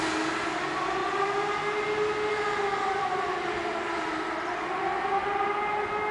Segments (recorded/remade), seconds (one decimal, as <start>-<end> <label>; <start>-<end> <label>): 0.0-6.1 recorded